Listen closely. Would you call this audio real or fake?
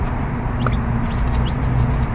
real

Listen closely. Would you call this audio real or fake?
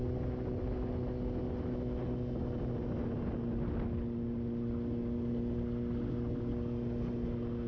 real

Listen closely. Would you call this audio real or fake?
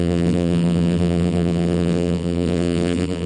fake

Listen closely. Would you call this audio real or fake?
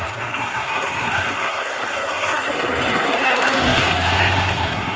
fake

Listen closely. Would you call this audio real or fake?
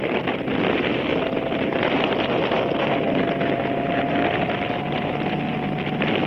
real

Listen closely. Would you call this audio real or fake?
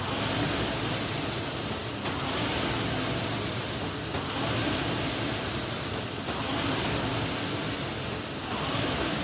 real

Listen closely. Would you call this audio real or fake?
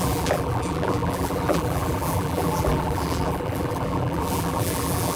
fake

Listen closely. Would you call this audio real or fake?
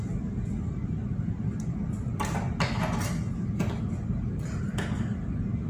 real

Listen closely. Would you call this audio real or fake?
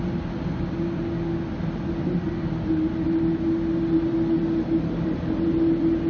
real